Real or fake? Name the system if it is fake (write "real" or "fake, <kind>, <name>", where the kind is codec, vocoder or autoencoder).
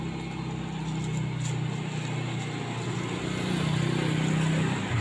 real